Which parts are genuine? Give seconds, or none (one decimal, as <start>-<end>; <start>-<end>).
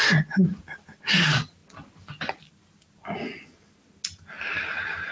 0.0-5.1